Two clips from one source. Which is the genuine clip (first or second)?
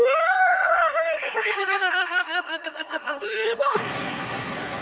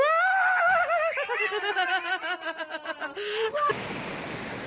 second